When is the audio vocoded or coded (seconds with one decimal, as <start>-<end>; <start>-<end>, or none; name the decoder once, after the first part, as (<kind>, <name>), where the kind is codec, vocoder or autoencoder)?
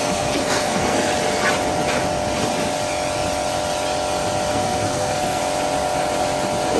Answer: 0.0-1.1 (codec, SNAC); 4.5-5.4